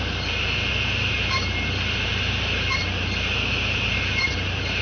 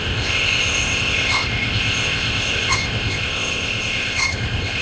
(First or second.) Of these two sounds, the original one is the first